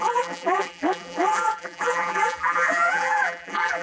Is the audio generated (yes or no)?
yes